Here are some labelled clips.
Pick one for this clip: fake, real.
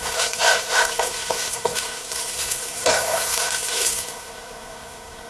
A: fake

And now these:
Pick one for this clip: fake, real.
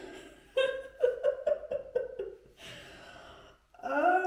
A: real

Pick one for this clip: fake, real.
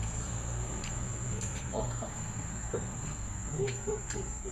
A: fake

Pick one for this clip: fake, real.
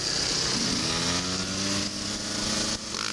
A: real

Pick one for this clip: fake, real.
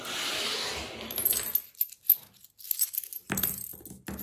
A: real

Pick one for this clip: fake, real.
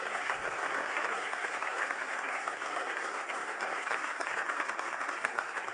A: fake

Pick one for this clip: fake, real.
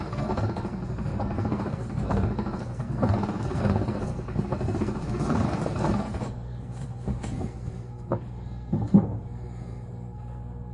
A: fake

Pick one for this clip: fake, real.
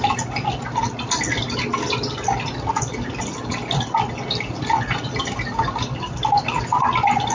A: real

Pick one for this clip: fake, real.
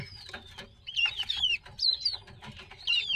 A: real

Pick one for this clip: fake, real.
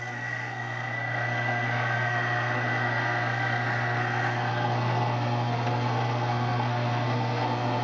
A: fake